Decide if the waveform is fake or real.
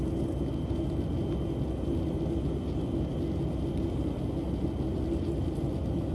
real